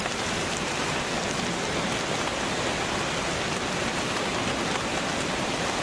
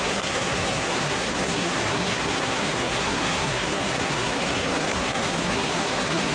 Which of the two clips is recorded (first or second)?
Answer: first